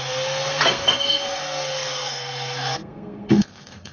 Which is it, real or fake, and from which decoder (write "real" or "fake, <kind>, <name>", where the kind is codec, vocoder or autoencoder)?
fake, codec, SNAC